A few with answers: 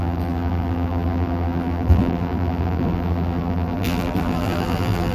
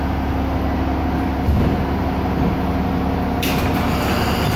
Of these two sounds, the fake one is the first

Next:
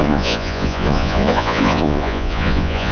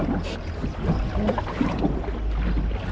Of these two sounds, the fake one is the first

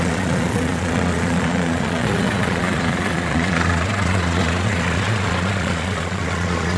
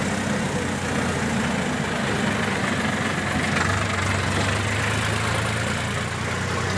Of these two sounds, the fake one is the first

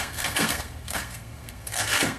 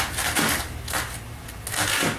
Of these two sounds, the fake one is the first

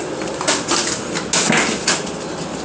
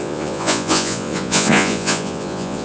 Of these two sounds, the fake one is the second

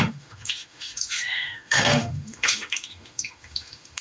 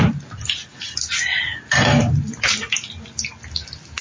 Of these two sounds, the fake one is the first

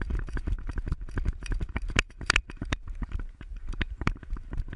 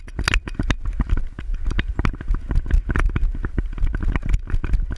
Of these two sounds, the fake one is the first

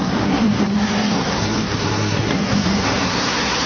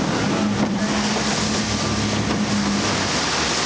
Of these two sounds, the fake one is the first